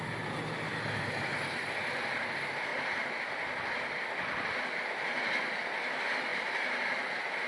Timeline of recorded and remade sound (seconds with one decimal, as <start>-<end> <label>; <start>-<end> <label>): 0.0-6.3 recorded; 6.3-7.5 remade